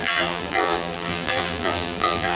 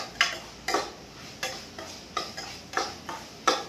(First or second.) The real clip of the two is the second